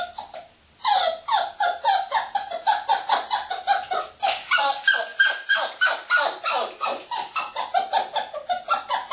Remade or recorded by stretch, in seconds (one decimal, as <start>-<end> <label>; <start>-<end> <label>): 0.0-5.1 recorded; 5.1-5.8 remade; 5.8-9.1 recorded